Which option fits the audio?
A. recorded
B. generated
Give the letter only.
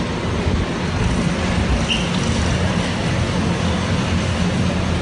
A